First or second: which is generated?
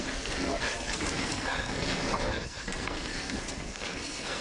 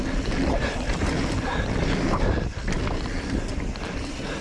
first